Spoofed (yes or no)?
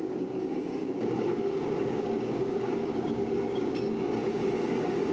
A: yes